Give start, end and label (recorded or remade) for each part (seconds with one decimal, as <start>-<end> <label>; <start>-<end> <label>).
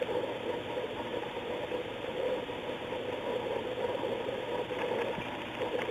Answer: 0.0-1.1 recorded; 1.1-3.0 remade; 3.0-5.9 recorded